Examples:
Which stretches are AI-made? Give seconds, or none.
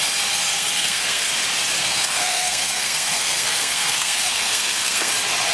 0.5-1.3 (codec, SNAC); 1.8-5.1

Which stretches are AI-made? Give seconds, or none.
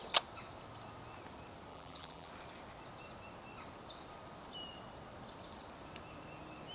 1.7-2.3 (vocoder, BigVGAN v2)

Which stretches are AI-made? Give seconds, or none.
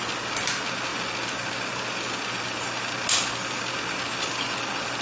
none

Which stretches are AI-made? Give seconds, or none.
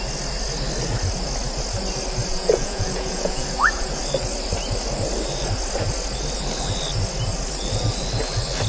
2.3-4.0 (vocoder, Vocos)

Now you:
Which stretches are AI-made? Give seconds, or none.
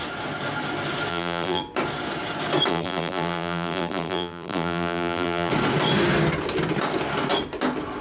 1.1-1.6 (vocoder, BigVGAN v2); 2.7-5.5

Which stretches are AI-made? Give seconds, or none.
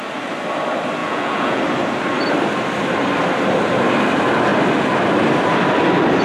1.0-1.6 (vocoder, Vocos)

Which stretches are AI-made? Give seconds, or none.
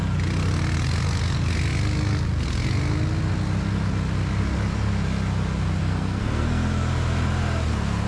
5.8-6.9 (codec, SNAC)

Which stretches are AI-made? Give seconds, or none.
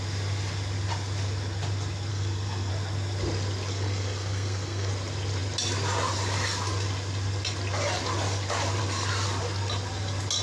2.1-2.7 (codec, SNAC); 3.7-4.9